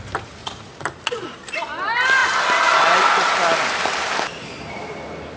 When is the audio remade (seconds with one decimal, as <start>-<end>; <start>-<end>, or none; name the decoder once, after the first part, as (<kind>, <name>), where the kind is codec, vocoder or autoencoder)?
0.4-1.4 (vocoder, Vocos)